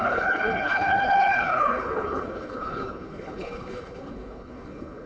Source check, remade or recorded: remade